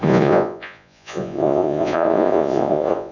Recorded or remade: remade